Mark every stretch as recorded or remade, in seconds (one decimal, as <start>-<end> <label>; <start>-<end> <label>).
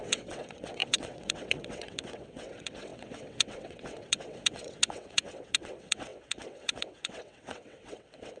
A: 0.0-8.4 remade